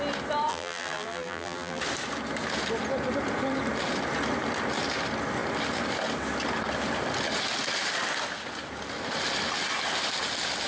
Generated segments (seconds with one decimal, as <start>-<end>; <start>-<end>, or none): 0.5-1.8